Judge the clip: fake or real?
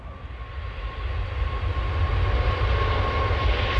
real